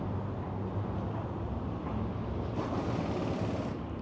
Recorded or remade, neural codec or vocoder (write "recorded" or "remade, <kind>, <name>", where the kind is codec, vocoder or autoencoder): recorded